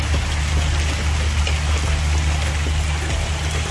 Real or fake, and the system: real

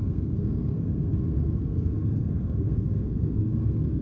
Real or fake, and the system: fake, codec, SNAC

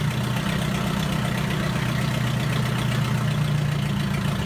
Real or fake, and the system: real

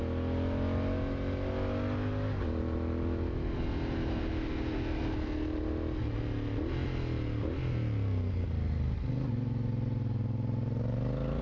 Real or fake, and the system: real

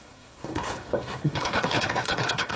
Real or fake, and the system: fake, codec, SNAC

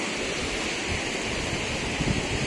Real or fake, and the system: real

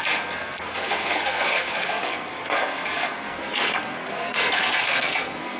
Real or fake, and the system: fake, codec, SNAC